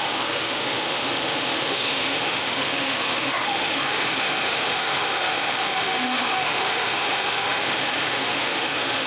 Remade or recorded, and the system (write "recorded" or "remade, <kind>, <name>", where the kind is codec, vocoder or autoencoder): remade, autoencoder, DAC-VAE